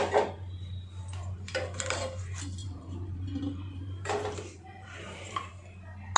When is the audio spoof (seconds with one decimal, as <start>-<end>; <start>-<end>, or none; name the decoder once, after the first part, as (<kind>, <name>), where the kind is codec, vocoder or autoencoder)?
2.6-5.5 (vocoder, BigVGAN v2)